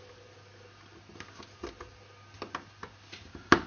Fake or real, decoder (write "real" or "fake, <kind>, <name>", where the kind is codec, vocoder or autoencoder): real